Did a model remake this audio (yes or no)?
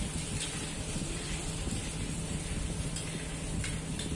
no